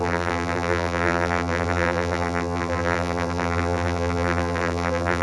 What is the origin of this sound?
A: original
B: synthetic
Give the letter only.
B